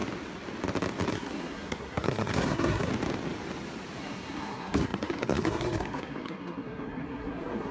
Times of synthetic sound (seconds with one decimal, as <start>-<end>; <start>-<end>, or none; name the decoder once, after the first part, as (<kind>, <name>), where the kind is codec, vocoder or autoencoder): 1.1-2.9 (codec, SNAC); 4.0-7.7